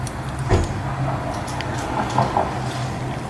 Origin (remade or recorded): recorded